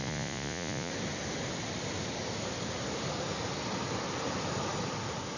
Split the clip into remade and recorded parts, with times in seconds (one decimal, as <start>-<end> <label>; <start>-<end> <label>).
0.0-0.9 remade; 0.9-5.4 recorded